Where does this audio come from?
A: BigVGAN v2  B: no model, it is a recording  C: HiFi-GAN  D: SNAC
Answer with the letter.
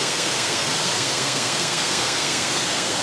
D